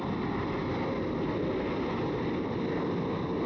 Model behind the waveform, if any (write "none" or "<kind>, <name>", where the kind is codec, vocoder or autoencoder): none